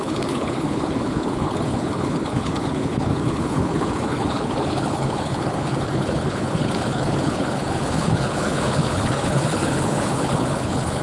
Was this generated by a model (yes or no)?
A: yes